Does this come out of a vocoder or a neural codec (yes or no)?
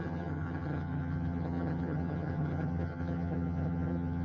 yes